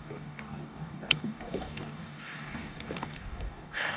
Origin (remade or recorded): remade